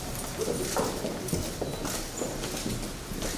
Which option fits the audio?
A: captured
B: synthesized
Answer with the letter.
A